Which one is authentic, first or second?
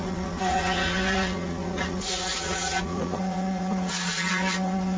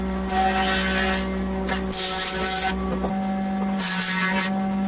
second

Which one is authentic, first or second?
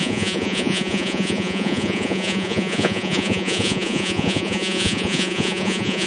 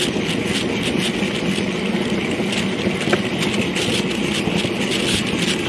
second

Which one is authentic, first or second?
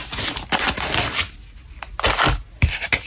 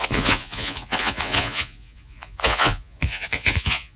first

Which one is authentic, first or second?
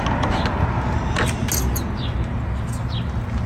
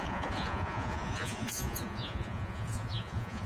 first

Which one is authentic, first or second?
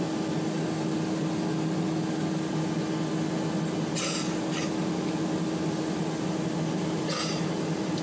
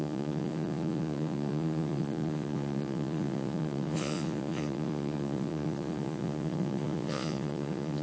first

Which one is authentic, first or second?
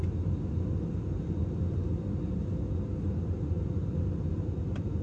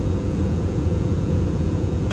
first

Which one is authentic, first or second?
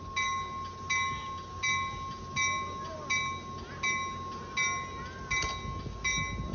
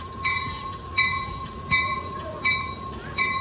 first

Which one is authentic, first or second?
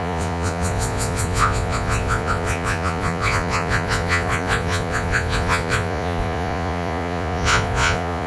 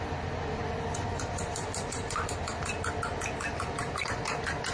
second